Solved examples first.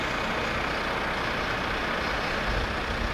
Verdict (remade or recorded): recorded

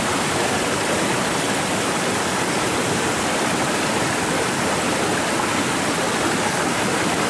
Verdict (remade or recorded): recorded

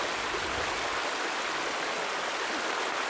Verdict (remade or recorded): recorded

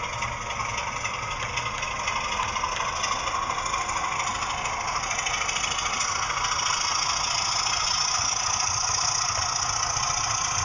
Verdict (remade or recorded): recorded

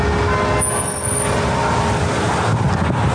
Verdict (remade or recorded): recorded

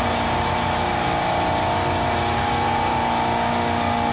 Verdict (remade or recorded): recorded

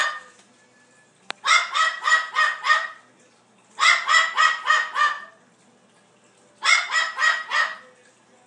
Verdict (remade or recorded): recorded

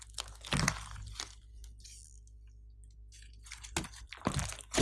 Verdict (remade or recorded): recorded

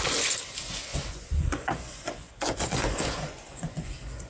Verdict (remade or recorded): remade